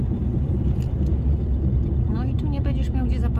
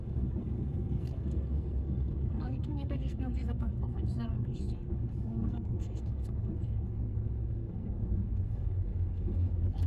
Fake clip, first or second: second